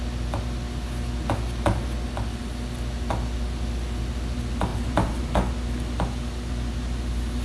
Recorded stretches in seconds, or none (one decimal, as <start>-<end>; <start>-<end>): 0.0-4.7; 5.5-7.4